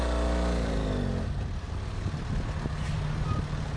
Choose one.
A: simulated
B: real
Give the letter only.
B